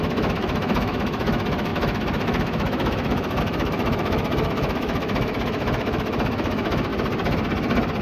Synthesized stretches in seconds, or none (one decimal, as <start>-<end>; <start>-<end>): 0.0-6.9